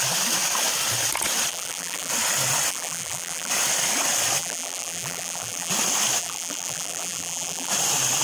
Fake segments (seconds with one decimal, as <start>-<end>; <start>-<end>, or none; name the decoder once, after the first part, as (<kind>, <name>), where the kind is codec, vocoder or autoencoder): 1.5-2.1 (vocoder, BigVGAN v2); 2.7-3.5; 4.4-5.7; 6.2-7.7